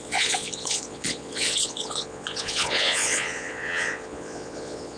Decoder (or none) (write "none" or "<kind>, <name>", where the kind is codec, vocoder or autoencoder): vocoder, Vocos